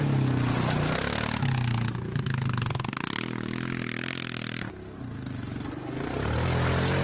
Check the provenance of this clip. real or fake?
real